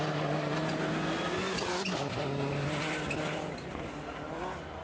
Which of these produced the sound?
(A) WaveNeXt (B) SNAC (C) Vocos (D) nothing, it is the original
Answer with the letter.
D